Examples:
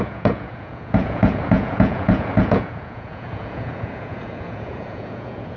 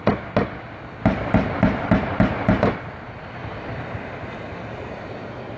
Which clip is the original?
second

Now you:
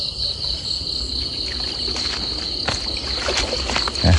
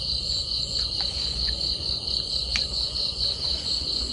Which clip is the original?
first